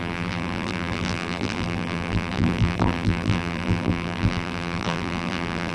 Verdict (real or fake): fake